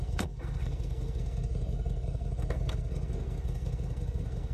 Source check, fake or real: fake